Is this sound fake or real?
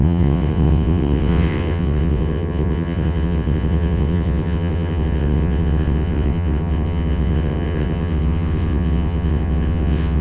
fake